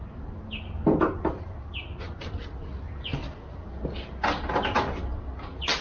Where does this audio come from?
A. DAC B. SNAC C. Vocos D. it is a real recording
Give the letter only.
D